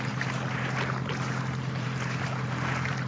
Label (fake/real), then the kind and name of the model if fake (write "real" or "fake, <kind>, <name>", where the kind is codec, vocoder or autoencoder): fake, vocoder, BigVGAN v2